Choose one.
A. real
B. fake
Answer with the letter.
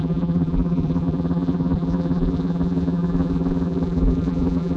B